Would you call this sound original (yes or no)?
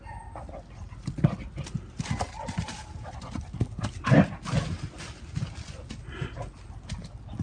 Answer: yes